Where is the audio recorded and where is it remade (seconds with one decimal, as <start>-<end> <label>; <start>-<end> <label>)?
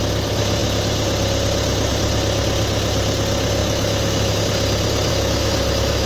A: 0.0-3.6 recorded; 3.6-4.4 remade; 4.4-5.1 recorded; 5.1-6.1 remade